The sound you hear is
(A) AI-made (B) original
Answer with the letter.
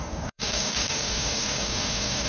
A